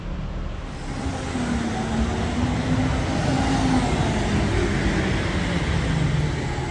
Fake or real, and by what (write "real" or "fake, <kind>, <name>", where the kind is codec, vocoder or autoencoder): real